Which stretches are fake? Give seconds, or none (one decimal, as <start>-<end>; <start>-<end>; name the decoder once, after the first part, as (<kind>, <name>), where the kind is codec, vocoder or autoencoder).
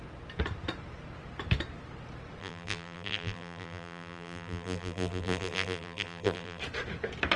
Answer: 2.4-6.6 (vocoder, BigVGAN v2)